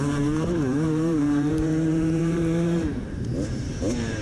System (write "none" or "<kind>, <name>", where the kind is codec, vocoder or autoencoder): vocoder, BigVGAN v2